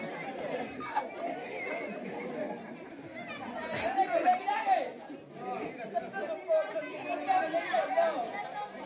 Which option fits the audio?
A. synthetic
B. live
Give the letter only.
B